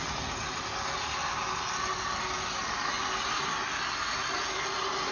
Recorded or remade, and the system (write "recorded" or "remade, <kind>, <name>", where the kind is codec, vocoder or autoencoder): recorded